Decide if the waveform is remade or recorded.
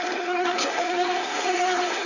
remade